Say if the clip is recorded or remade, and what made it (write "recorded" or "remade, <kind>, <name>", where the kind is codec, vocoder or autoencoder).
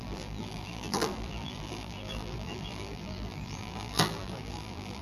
remade, vocoder, BigVGAN v2